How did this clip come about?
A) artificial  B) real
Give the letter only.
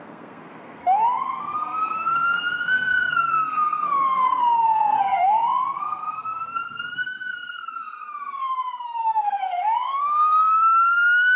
A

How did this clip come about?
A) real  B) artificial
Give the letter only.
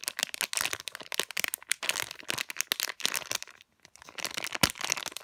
A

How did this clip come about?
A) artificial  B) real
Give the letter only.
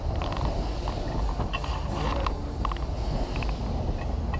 B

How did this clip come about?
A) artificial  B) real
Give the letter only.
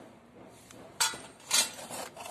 A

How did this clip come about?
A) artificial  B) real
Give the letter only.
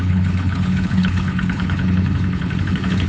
A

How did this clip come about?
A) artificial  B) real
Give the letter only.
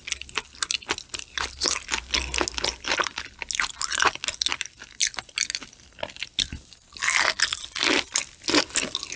B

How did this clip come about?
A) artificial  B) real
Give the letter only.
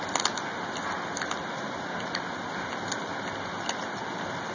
B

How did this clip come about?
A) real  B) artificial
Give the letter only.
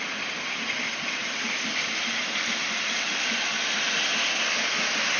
A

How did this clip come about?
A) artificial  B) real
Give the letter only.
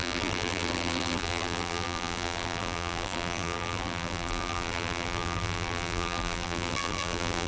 A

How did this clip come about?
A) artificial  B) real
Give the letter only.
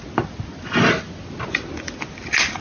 B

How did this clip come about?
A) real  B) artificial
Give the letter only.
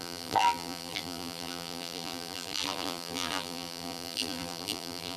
B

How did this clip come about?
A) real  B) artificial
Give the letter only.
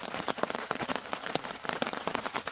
B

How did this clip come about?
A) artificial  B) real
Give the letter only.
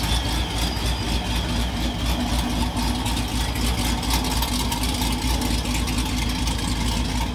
B